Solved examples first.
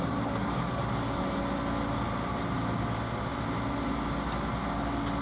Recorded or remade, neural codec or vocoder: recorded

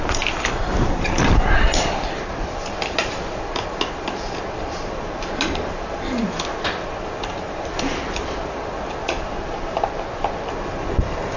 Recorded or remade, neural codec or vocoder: remade, vocoder, BigVGAN v2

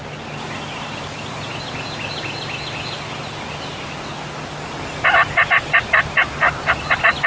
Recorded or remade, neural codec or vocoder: recorded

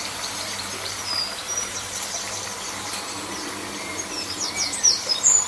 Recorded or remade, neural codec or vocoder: remade, vocoder, BigVGAN v2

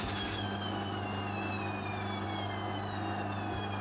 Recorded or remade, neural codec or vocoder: recorded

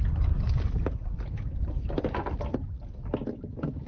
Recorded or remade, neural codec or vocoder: recorded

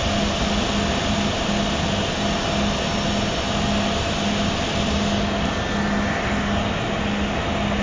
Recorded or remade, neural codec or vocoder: recorded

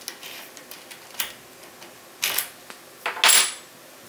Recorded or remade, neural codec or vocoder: recorded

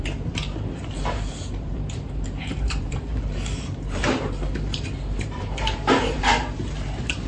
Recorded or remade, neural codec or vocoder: remade, vocoder, BigVGAN v2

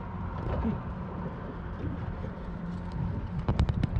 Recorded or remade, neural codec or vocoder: remade, vocoder, BigVGAN v2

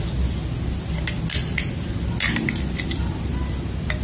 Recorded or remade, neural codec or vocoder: recorded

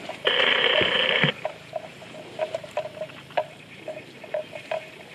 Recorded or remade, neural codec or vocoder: remade, vocoder, BigVGAN v2